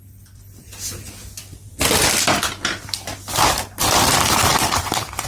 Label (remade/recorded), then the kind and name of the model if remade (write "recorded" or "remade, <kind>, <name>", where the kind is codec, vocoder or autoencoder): remade, vocoder, BigVGAN v2